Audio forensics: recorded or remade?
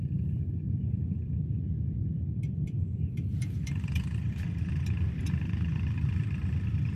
remade